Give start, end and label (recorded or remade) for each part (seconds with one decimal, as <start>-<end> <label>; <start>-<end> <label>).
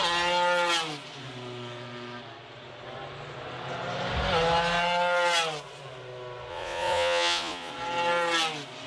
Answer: 0.0-6.5 recorded; 6.5-7.7 remade; 7.7-8.9 recorded